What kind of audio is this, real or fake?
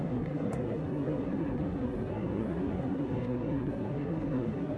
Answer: fake